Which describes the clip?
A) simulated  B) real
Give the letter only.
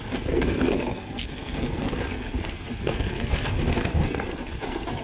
A